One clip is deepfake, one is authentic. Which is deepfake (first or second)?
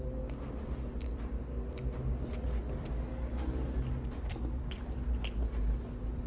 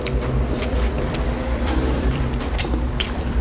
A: second